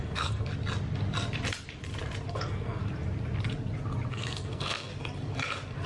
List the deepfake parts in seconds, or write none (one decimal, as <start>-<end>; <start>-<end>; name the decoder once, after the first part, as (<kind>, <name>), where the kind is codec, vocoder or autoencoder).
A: 0.0-0.5 (codec, SNAC); 2.3-2.8; 4.1-4.9